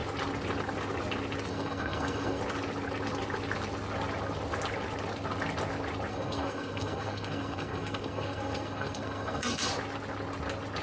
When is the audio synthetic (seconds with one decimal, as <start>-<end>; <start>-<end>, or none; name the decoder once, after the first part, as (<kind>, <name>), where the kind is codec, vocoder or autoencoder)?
1.5-2.4 (codec, SNAC); 6.1-9.7

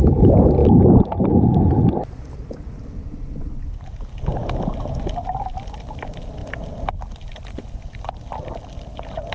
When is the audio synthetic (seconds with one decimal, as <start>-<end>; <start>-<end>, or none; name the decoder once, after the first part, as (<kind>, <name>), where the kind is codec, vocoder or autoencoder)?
none

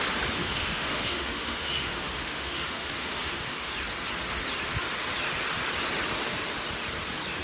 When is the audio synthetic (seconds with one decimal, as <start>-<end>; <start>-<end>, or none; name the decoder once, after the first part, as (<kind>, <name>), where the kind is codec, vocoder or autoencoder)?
0.4-3.7 (autoencoder, DAC-VAE)

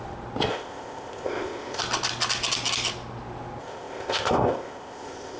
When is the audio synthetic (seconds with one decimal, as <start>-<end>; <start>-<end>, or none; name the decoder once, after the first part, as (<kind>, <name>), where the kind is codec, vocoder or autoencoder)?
0.5-1.8 (codec, ZipCodec); 3.6-5.4

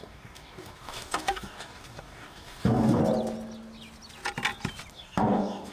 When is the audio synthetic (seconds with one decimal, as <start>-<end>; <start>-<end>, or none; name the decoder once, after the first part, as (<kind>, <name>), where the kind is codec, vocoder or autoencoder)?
0.0-3.0 (codec, DAC); 4.9-5.7

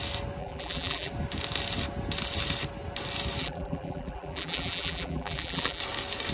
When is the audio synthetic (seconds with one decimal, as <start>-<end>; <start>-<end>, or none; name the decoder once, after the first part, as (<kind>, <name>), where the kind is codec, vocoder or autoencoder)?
0.4-1.1 (vocoder, BigVGAN v2); 3.4-5.8

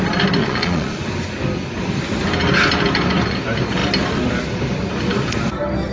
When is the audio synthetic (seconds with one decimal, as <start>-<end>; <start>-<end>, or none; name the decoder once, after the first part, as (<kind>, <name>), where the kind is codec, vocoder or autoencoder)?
0.4-1.0 (vocoder, Vocos)